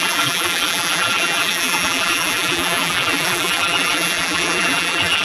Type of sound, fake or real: fake